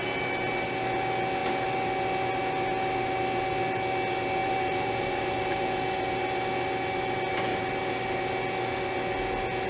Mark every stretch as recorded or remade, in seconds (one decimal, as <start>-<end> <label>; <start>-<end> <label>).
0.0-4.4 recorded; 4.4-6.2 remade; 6.2-7.5 recorded; 7.5-8.2 remade; 8.2-9.7 recorded